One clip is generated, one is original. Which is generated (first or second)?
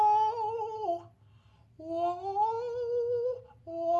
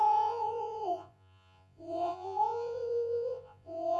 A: second